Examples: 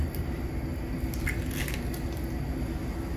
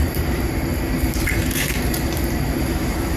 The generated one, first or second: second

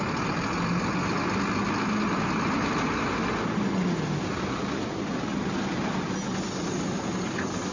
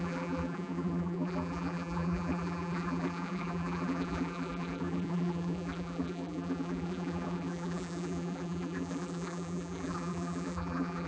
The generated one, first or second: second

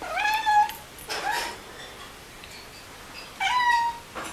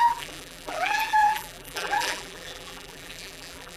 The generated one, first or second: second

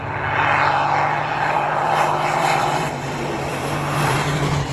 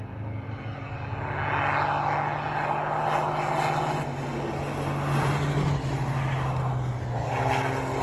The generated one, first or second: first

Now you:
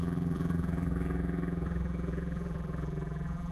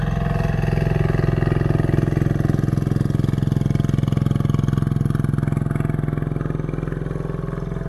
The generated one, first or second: first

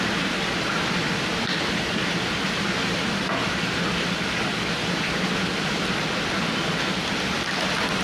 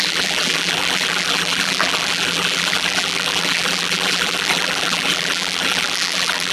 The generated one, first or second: second